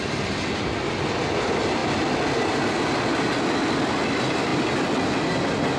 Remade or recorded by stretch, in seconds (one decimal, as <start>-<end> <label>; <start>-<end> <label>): 0.0-5.8 recorded